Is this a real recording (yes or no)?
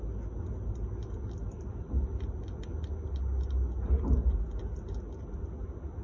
yes